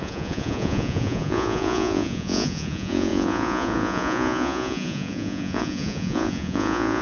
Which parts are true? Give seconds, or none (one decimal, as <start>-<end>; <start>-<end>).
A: none